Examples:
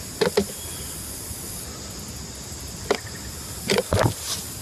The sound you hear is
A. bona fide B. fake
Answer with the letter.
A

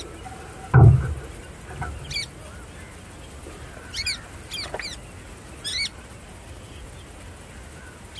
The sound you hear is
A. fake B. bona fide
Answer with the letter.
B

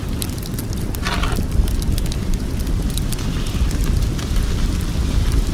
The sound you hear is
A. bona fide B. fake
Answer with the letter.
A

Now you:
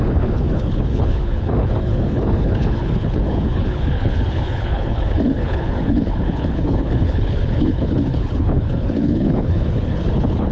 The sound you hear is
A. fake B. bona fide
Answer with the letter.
A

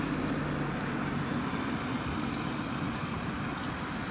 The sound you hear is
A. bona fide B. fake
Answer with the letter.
A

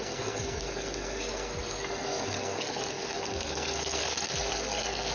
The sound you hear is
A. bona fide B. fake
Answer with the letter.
B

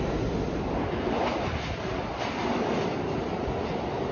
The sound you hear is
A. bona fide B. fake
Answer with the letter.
A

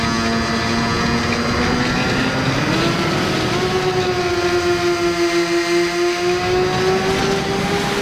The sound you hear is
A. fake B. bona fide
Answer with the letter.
B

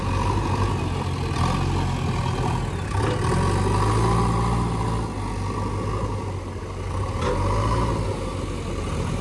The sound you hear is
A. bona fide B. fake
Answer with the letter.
A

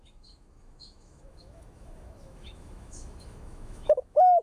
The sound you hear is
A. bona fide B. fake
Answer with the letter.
B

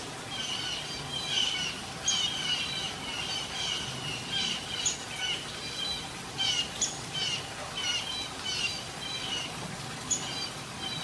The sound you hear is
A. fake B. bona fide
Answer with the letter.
B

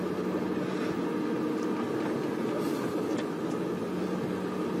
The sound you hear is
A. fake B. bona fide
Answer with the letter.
B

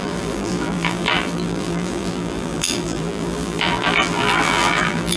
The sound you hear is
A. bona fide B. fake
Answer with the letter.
B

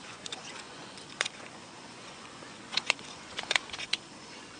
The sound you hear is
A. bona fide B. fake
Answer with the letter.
B